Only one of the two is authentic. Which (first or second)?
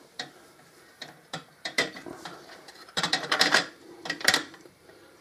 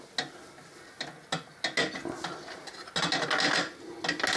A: second